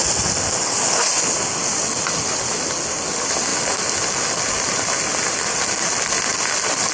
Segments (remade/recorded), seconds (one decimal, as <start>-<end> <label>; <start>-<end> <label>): 0.0-6.9 recorded